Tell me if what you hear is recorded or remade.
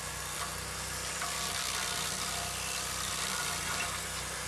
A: recorded